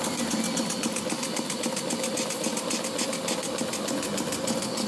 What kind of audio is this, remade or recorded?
recorded